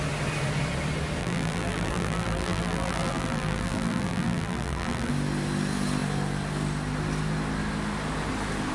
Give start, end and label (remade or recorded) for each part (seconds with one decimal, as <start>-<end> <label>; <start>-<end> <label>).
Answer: 0.0-1.2 recorded; 1.2-5.1 remade; 5.1-8.7 recorded

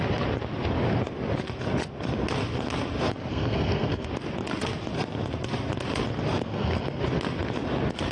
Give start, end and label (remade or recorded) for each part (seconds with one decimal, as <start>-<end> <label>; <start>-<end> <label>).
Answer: 0.0-3.3 recorded; 3.3-4.1 remade; 4.1-6.4 recorded; 6.4-7.0 remade; 7.0-8.1 recorded

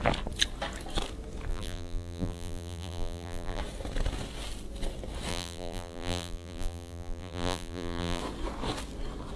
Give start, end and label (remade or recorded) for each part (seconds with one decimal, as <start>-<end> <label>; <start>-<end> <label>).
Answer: 0.0-1.5 recorded; 1.5-3.6 remade; 3.6-5.3 recorded; 5.3-8.2 remade; 8.2-9.4 recorded